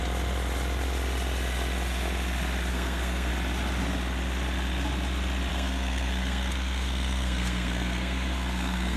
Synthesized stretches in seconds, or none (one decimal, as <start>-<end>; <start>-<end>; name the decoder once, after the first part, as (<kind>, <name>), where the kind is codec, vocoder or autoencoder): 2.7-3.3 (codec, SNAC); 5.5-9.0